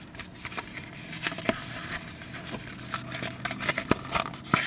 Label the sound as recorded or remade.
recorded